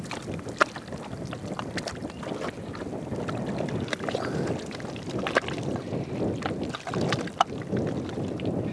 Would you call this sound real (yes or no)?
yes